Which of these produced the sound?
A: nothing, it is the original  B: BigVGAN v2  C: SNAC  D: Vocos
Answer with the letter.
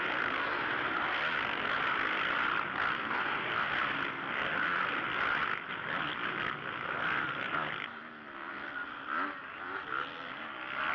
A